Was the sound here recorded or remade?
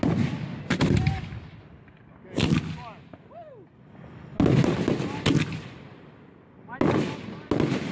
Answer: recorded